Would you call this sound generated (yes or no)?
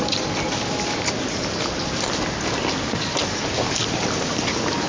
no